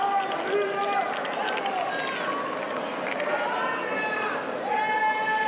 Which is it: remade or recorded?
recorded